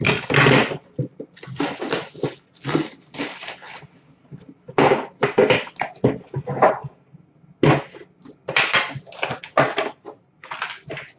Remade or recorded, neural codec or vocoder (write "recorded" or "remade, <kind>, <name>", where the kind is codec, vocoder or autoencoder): recorded